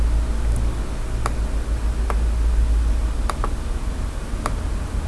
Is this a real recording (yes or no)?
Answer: yes